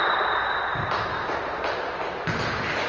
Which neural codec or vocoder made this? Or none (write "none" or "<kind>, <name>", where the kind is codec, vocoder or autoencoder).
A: none